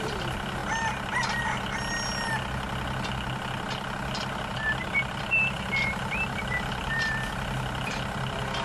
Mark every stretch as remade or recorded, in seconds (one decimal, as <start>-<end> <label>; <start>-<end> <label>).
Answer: 0.0-0.6 remade; 0.6-4.5 recorded; 4.5-8.6 remade